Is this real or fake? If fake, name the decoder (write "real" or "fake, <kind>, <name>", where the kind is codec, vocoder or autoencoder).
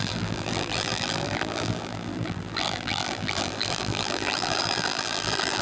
fake, vocoder, BigVGAN v2